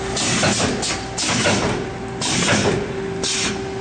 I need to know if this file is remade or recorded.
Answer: recorded